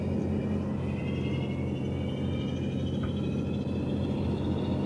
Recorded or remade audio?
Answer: recorded